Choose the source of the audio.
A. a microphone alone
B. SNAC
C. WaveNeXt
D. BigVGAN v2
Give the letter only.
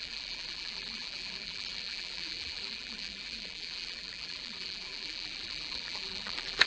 D